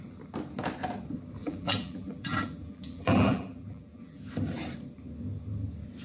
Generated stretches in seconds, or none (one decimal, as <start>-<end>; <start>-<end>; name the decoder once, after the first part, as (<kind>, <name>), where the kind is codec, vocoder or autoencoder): 1.4-4.2 (vocoder, BigVGAN v2)